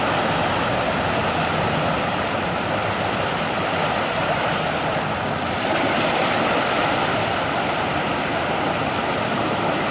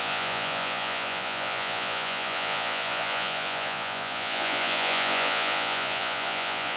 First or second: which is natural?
first